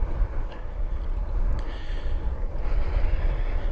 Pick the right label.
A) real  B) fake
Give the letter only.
A